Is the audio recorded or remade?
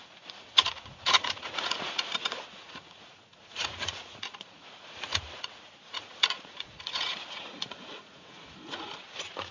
remade